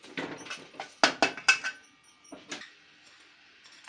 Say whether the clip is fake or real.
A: real